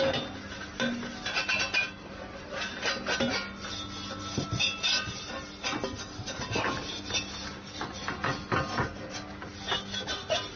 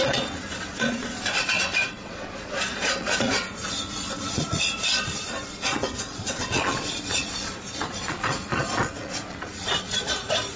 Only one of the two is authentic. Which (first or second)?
first